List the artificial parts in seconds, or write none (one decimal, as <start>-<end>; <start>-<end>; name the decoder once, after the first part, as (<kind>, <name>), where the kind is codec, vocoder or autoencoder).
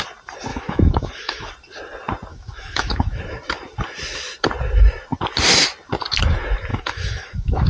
0.5-1.5 (autoencoder, DAC-VAE); 2.3-3.2; 6.7-7.7